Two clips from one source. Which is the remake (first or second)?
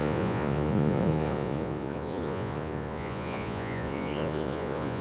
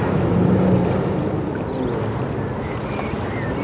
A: first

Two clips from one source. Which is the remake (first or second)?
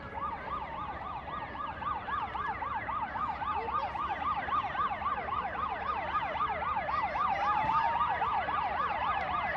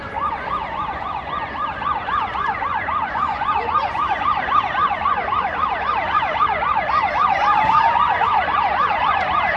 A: second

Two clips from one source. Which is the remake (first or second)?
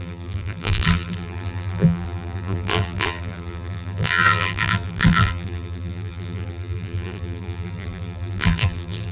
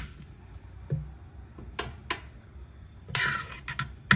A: first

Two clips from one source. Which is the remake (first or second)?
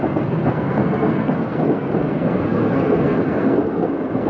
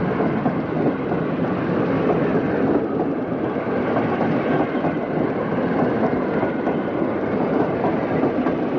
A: first